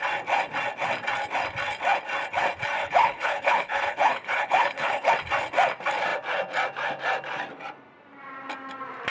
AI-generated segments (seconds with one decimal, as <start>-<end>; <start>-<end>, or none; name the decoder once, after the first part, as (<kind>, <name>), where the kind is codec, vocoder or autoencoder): 2.8-5.1 (codec, HILCodec)